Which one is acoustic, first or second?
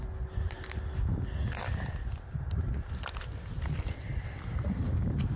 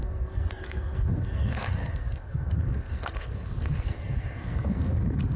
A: first